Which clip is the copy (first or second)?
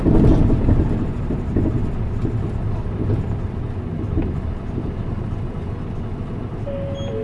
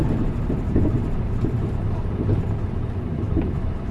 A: second